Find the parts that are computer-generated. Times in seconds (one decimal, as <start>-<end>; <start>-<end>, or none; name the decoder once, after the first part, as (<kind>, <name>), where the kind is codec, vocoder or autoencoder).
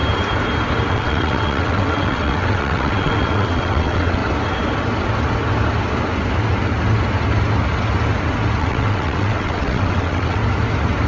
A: 0.9-4.2 (vocoder, WaveNeXt); 8.6-10.4